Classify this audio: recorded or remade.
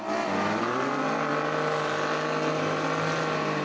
recorded